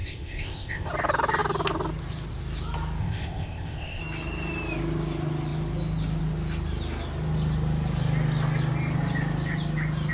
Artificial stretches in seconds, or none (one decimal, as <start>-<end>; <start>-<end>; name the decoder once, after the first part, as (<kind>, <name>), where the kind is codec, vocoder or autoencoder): 0.0-0.9 (codec, ZipCodec); 3.0-4.0